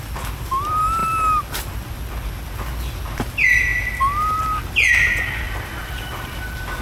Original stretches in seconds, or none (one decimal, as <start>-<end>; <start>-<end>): 0.0-6.8